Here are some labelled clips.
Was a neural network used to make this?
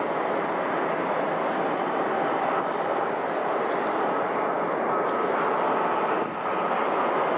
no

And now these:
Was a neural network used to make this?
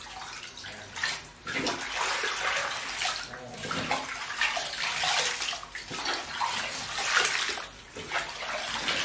no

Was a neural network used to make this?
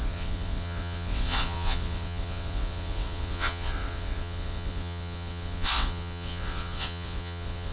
yes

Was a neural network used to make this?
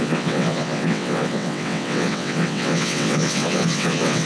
yes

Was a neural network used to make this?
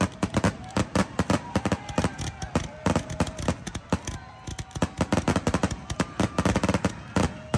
no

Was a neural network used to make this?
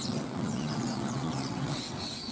yes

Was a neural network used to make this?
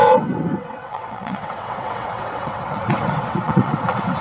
yes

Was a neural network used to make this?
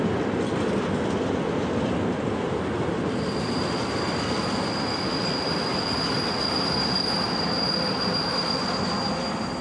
no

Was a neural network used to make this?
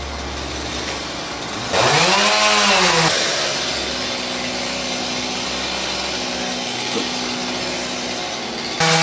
no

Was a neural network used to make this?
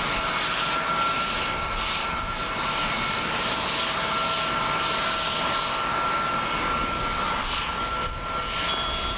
no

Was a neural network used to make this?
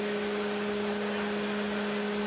no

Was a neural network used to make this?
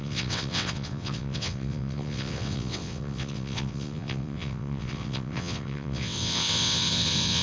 yes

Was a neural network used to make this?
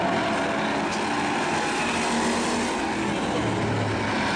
no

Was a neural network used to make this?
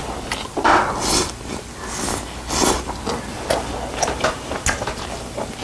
no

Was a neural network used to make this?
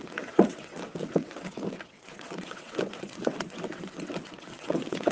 yes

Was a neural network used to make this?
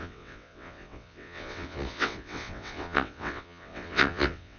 yes